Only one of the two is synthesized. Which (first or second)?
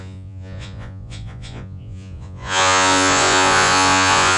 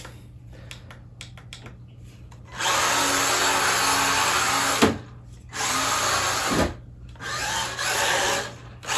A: first